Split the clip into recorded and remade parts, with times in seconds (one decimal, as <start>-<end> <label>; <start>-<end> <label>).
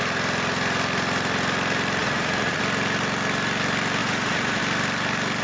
0.0-2.0 recorded; 2.0-2.6 remade; 2.6-4.0 recorded; 4.0-4.6 remade; 4.6-5.4 recorded